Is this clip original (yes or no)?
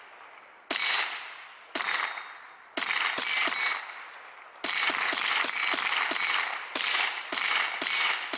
yes